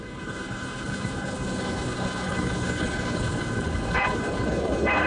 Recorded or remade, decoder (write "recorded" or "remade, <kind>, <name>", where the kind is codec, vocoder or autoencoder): remade, codec, HILCodec